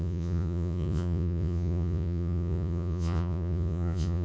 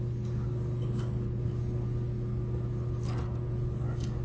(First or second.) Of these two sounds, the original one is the second